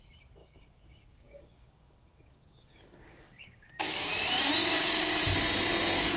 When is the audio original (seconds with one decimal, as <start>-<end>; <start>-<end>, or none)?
0.0-0.4; 4.1-4.6; 5.2-6.2